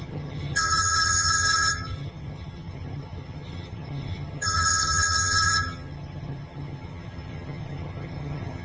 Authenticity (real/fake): fake